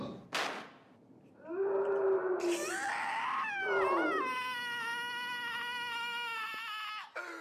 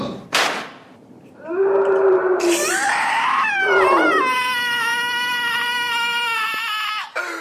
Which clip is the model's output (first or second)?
second